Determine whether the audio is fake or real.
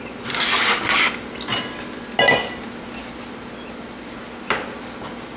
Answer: real